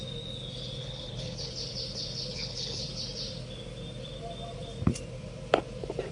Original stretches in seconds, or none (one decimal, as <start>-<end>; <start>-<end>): 0.0-0.8; 1.5-2.3; 2.8-6.1